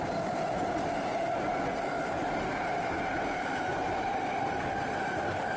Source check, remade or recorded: recorded